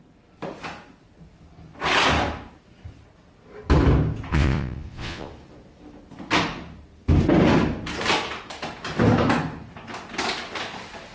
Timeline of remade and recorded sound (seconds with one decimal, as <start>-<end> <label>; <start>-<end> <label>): 0.0-4.3 recorded; 4.3-5.3 remade; 5.3-11.1 recorded